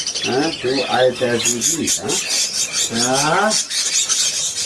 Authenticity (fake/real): real